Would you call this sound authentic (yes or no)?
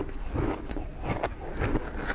yes